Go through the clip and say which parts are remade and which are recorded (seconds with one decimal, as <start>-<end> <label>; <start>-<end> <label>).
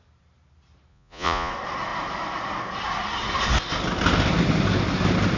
0.0-0.9 recorded; 0.9-1.5 remade; 1.5-5.4 recorded